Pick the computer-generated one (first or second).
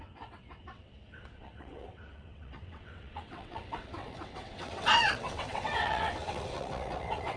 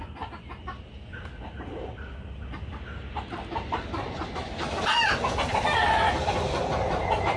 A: first